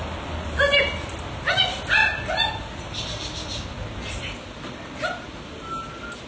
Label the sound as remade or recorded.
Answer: recorded